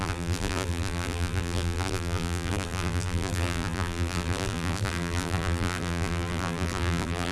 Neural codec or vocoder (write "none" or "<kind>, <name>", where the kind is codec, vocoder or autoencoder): vocoder, BigVGAN v2